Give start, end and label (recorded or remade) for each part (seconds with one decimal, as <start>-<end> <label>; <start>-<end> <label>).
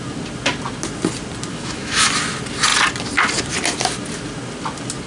0.0-1.5 recorded; 1.5-2.1 remade; 2.1-5.1 recorded